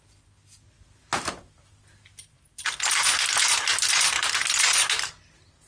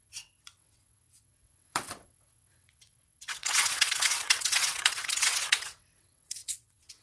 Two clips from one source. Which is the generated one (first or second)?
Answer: second